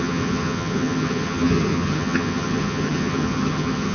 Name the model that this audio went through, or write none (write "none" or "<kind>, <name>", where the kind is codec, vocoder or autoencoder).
vocoder, HiFi-GAN